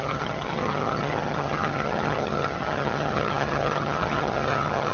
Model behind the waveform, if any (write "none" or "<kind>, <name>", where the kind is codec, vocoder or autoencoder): vocoder, HiFi-GAN